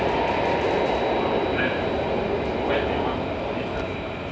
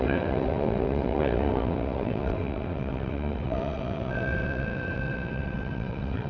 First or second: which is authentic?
first